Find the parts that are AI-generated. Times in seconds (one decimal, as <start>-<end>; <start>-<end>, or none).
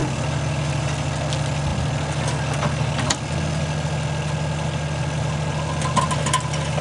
none